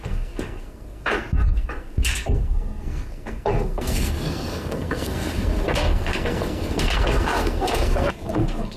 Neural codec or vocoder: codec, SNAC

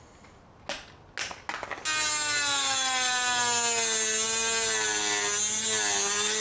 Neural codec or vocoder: none